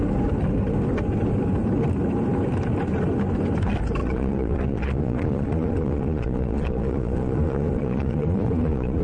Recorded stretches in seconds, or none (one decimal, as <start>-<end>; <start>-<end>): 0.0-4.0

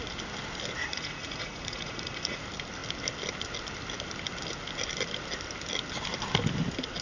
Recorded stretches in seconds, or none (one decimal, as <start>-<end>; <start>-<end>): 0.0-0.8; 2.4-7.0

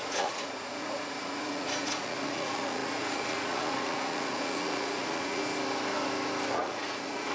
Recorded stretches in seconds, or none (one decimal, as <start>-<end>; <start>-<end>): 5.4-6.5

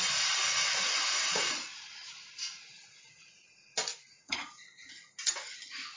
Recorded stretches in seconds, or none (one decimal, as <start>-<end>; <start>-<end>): 0.0-0.8; 3.5-3.9; 4.9-6.0

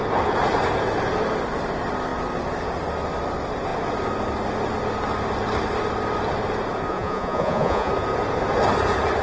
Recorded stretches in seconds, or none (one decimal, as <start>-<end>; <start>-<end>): 0.0-6.9; 7.9-9.2